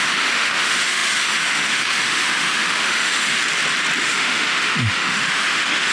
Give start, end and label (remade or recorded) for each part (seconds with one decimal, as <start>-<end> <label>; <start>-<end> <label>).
0.0-3.4 remade; 3.4-4.0 recorded; 4.0-5.9 remade